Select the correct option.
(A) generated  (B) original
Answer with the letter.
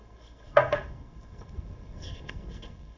A